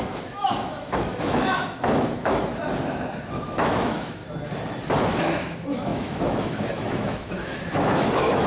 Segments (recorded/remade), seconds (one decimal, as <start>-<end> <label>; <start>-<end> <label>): 0.0-2.5 remade; 2.5-3.2 recorded; 3.2-4.2 remade; 4.2-5.1 recorded; 5.1-8.5 remade